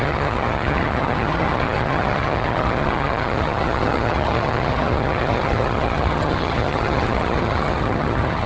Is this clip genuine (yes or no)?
no